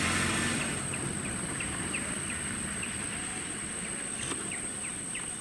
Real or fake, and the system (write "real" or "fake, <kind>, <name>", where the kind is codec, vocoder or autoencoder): real